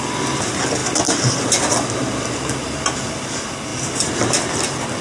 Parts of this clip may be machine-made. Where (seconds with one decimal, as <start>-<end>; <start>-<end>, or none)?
none